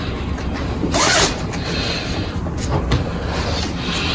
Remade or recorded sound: recorded